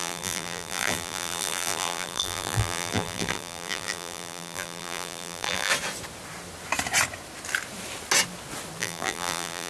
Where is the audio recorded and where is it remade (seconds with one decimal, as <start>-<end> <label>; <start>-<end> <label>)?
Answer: 0.0-5.7 remade; 5.7-8.8 recorded; 8.8-9.7 remade